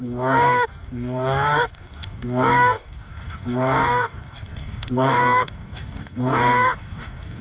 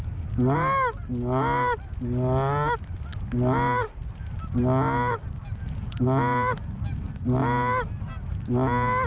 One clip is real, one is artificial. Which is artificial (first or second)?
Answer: first